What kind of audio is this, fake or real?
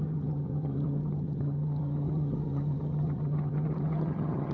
fake